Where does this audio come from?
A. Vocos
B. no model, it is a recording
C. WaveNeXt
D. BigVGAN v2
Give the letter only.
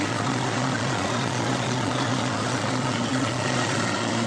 A